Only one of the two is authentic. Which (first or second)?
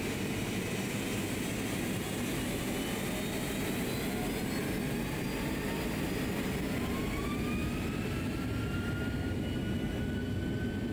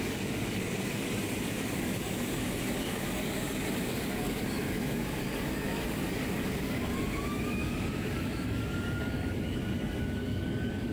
first